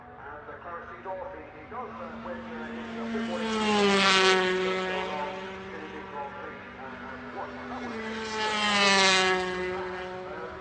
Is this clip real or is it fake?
real